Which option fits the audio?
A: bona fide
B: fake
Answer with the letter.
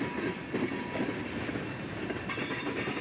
A